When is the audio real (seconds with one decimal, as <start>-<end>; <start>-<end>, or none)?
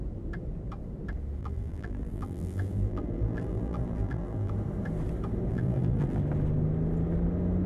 0.0-1.4; 4.5-5.5; 6.2-7.7